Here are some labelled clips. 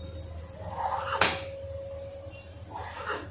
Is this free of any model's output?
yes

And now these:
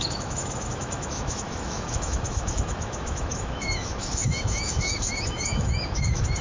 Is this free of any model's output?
no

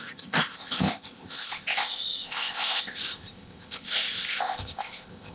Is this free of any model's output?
no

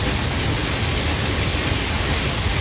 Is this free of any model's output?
yes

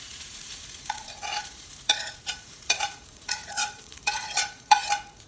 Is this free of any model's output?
no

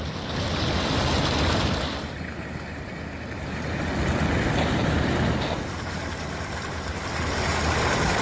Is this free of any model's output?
yes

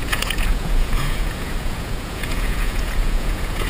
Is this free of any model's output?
no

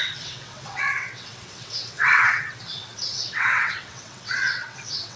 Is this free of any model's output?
no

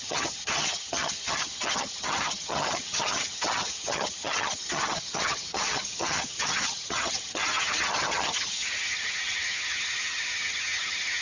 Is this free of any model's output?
no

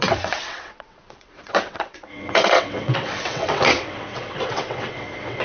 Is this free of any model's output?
no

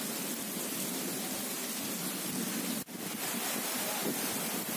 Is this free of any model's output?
yes